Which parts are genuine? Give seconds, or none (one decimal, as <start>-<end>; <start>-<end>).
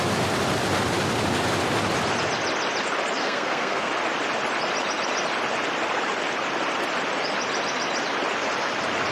0.0-3.2; 3.9-9.1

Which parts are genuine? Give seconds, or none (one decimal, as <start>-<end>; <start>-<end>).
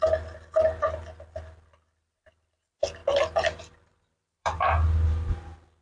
1.0-3.0; 5.1-5.8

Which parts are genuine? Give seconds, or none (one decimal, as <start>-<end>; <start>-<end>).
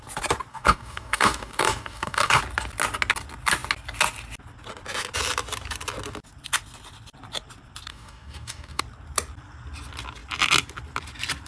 0.0-0.5; 2.4-7.9; 8.8-11.5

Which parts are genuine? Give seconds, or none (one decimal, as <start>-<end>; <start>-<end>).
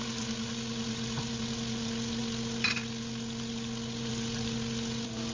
0.0-5.3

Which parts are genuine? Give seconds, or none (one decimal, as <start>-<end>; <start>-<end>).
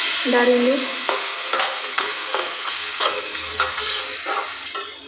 0.0-0.9; 4.0-5.1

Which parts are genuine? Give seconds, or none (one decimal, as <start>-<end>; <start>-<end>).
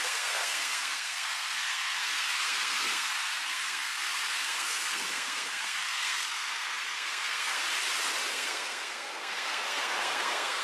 7.6-8.3